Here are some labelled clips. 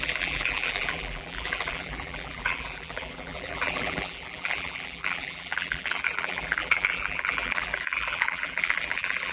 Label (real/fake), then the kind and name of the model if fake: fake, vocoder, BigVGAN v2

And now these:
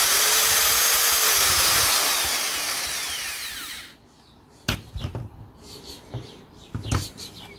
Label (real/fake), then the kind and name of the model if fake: fake, vocoder, BigVGAN v2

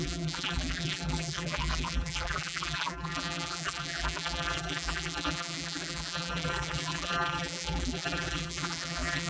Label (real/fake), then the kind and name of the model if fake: fake, vocoder, BigVGAN v2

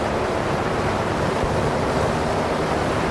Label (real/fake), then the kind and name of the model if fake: fake, vocoder, BigVGAN v2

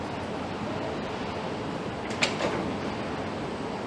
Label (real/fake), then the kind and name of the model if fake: real